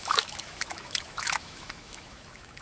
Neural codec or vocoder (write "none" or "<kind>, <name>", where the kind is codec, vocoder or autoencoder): autoencoder, DAC-VAE